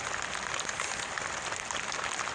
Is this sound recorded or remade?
recorded